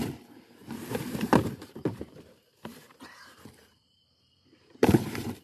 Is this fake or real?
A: fake